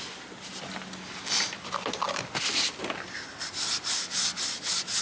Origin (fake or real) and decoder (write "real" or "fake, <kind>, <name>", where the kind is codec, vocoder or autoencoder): real